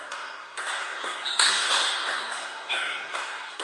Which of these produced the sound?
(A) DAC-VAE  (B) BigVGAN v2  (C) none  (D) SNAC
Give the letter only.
D